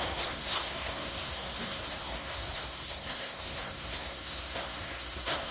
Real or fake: fake